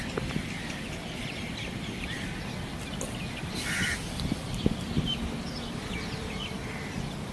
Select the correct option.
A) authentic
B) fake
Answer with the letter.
B